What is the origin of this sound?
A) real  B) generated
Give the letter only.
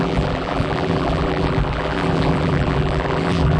B